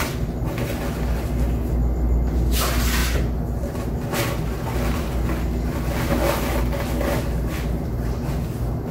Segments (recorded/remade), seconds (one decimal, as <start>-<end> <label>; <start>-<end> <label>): 0.0-8.9 recorded